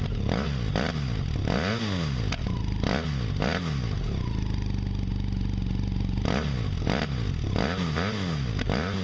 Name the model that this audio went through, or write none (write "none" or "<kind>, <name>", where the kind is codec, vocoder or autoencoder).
none